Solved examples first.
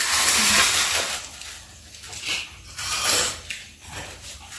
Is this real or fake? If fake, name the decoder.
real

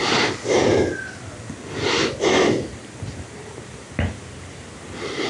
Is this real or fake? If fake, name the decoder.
real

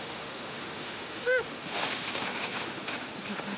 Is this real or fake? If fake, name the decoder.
fake, autoencoder, DAC-VAE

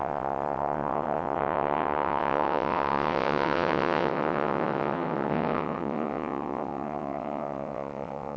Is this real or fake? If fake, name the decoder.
fake, vocoder, WaveNeXt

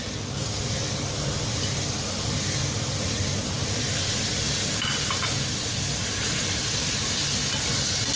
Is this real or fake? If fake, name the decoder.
real